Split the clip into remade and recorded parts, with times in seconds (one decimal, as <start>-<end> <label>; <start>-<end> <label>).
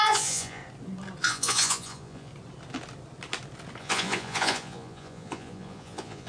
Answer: 0.0-0.6 remade; 0.6-1.2 recorded; 1.2-2.3 remade; 2.3-3.8 recorded; 3.8-6.3 remade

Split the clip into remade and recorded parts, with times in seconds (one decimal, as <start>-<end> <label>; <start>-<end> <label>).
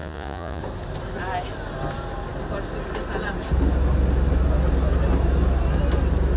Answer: 0.0-0.6 remade; 0.6-6.4 recorded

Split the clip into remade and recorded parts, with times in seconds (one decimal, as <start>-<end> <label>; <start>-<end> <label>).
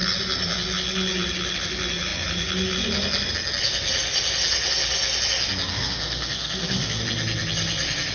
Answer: 0.0-5.7 recorded; 5.7-7.0 remade; 7.0-8.1 recorded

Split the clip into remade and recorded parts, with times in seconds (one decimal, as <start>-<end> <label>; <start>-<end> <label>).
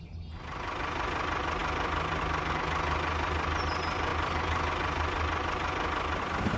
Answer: 0.0-6.6 recorded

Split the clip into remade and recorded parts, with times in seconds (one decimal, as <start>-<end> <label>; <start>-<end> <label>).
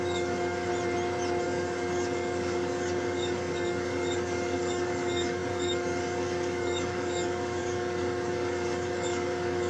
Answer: 0.0-0.7 remade; 0.7-1.4 recorded; 1.4-9.7 remade